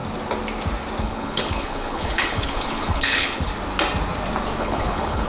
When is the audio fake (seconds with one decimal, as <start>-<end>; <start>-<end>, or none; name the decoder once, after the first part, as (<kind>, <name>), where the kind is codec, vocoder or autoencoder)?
1.0-3.5 (codec, HILCodec); 4.6-5.3